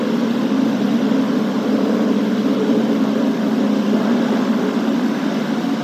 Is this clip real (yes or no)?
yes